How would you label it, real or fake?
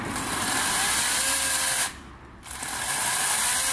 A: real